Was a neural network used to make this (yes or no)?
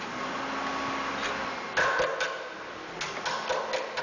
no